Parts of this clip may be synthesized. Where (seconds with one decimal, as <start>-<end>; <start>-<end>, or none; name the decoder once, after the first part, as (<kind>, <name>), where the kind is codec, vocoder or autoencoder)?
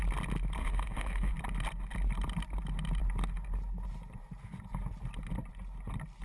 0.6-1.3 (autoencoder, DAC-VAE)